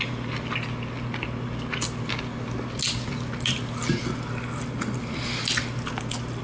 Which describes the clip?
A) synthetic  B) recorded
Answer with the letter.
B